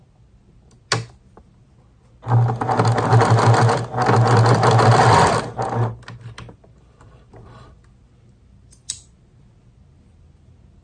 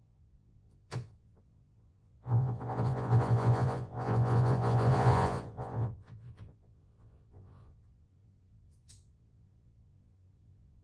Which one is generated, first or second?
second